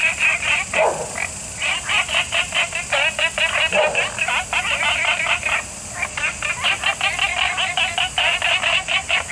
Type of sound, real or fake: real